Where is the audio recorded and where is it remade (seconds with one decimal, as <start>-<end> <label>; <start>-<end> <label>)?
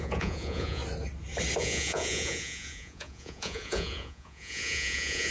0.0-0.8 remade; 0.8-1.6 recorded; 1.6-5.3 remade